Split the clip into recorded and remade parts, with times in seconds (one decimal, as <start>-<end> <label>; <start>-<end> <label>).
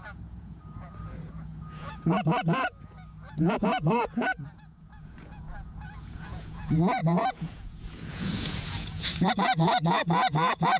0.0-10.8 remade